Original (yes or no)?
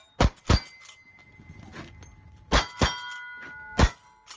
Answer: yes